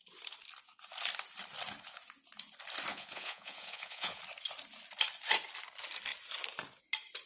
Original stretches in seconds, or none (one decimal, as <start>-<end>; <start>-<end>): 0.0-2.9; 4.2-7.3